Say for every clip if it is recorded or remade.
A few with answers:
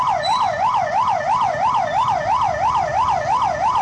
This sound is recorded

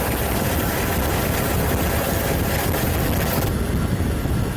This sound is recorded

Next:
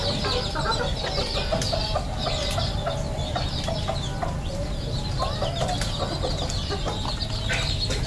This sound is recorded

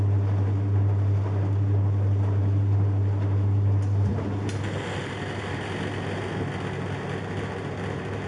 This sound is recorded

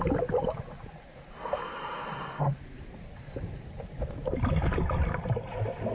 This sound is remade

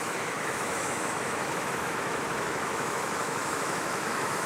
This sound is remade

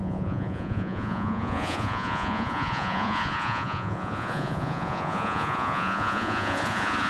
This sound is remade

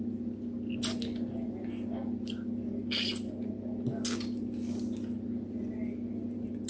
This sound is recorded